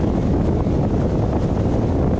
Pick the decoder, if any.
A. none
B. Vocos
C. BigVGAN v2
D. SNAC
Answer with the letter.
A